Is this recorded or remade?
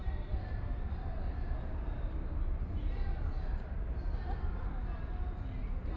recorded